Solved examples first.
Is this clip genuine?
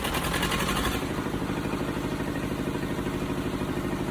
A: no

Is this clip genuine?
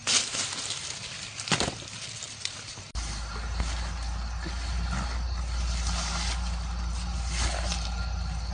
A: yes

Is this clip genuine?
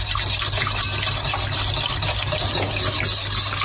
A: yes